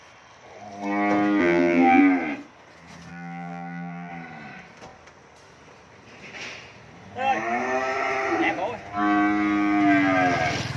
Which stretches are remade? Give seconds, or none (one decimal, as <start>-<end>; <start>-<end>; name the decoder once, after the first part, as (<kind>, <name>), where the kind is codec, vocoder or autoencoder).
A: 1.4-2.0 (vocoder, BigVGAN v2); 3.1-4.1